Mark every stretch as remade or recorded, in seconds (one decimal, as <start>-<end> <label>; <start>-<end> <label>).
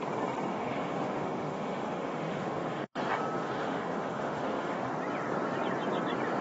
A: 0.0-0.5 recorded; 0.5-3.0 remade; 3.0-3.4 recorded; 3.4-4.9 remade; 4.9-6.4 recorded